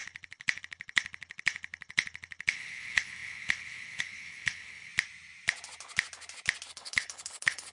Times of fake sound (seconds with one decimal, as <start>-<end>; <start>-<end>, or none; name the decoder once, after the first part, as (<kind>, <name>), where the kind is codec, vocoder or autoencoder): 0.0-4.9 (codec, HILCodec); 6.7-7.7